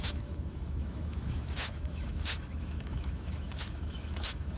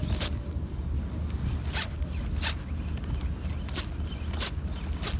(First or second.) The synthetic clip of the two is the first